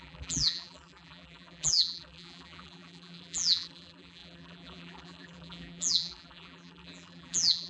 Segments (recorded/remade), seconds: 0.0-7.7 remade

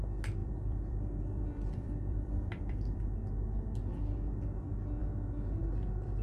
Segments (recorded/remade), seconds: 0.0-0.4 recorded; 0.4-3.3 remade; 3.3-6.2 recorded